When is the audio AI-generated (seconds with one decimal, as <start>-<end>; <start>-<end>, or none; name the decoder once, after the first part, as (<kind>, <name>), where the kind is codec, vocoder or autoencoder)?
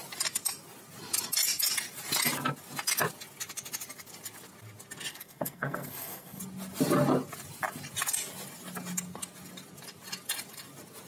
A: 5.1-6.4 (codec, SNAC)